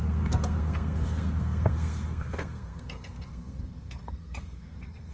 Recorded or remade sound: remade